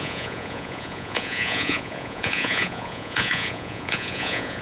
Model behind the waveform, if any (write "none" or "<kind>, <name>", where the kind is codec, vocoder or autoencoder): vocoder, Vocos